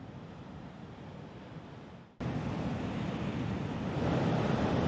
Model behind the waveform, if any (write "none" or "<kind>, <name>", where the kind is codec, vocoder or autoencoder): vocoder, BigVGAN v2